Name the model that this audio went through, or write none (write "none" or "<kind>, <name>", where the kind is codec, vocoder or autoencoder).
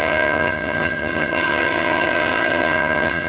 vocoder, HiFi-GAN